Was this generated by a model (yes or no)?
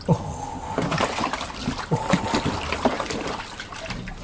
no